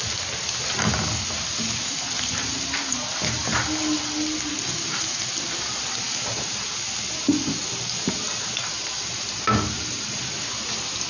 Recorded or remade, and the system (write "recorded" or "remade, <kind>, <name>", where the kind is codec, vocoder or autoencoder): recorded